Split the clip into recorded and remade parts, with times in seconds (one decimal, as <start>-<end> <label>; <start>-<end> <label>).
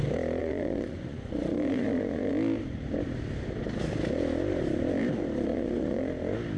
0.0-0.4 recorded; 0.4-2.3 remade; 2.3-5.5 recorded; 5.5-6.0 remade; 6.0-6.6 recorded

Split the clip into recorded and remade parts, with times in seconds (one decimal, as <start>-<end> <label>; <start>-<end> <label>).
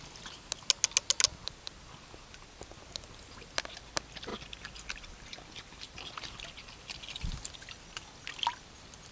0.0-9.1 recorded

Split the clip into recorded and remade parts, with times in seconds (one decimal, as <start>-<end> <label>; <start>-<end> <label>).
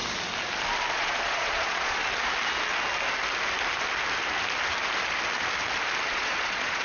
0.0-0.9 recorded; 0.9-2.0 remade; 2.0-6.1 recorded; 6.1-6.8 remade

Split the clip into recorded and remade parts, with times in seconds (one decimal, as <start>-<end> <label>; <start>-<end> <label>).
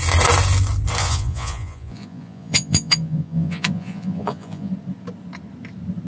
0.0-1.0 recorded; 1.0-4.7 remade; 4.7-6.1 recorded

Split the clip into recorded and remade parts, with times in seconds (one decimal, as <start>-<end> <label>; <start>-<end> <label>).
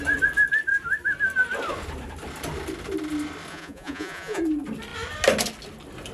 0.0-3.5 recorded; 3.5-4.4 remade; 4.4-6.1 recorded